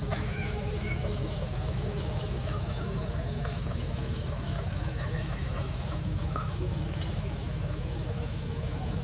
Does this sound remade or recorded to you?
remade